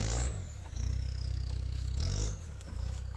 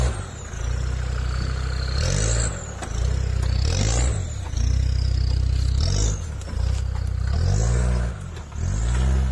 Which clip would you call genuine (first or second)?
second